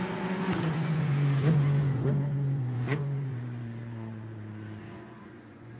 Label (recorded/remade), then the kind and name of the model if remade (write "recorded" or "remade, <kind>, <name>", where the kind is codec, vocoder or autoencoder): remade, vocoder, Vocos